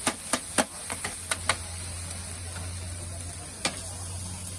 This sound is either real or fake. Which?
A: real